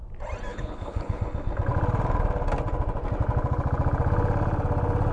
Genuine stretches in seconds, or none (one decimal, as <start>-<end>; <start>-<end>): 0.0-0.5; 1.2-5.1